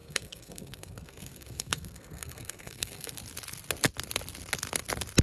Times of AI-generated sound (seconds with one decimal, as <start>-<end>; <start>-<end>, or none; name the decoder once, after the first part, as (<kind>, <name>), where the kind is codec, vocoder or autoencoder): 0.0-3.1 (codec, SNAC)